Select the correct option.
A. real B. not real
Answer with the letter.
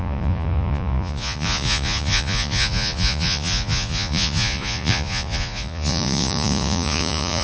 B